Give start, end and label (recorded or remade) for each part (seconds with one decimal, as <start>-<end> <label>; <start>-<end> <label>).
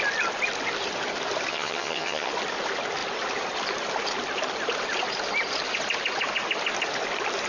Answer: 0.0-1.5 recorded; 1.5-2.3 remade; 2.3-7.5 recorded